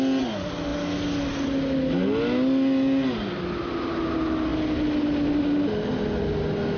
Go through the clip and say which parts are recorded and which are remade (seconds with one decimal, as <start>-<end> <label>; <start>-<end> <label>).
0.0-6.8 recorded